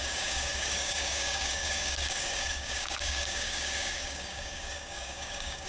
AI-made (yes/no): yes